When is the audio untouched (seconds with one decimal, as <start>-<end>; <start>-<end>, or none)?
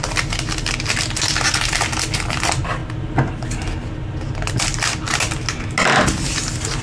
0.0-6.8